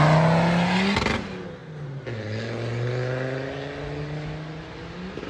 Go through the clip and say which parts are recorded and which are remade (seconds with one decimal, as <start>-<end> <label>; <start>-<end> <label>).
0.0-5.3 recorded